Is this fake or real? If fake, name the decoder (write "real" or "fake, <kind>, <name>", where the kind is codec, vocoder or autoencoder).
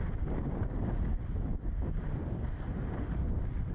real